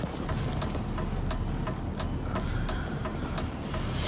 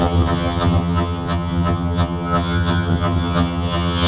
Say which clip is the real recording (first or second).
first